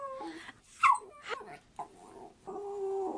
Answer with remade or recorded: recorded